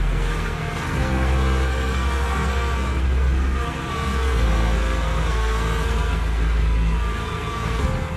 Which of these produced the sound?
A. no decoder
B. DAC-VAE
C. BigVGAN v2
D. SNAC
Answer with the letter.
D